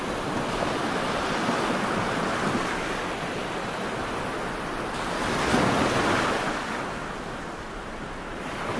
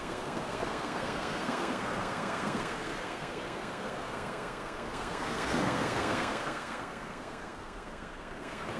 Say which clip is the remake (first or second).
second